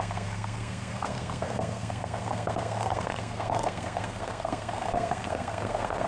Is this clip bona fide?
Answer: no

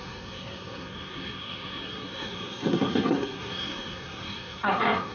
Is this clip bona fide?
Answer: no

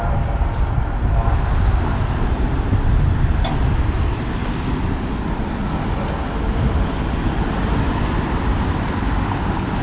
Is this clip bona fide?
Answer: yes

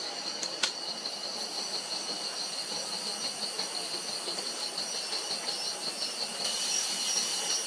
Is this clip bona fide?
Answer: yes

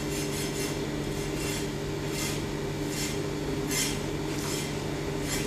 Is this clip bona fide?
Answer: yes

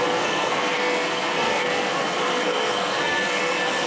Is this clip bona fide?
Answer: no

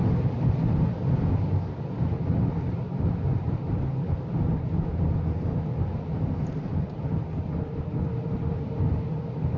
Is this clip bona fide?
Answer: yes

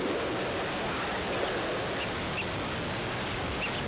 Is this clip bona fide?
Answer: yes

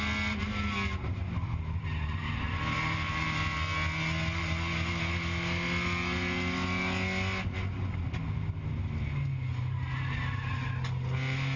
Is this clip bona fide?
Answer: yes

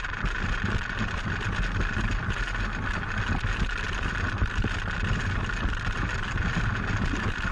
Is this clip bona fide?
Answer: yes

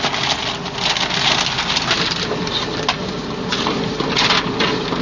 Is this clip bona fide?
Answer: yes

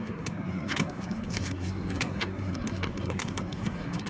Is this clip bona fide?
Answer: no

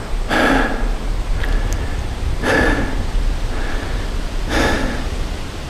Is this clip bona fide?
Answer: yes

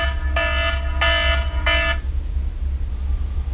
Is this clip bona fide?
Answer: yes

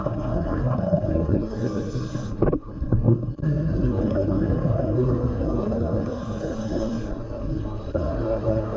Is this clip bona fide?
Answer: no